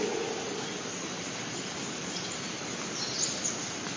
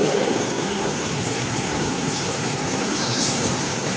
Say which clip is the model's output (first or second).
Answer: second